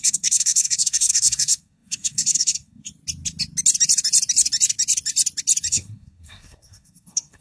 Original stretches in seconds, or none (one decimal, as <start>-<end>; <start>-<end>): 2.9-5.7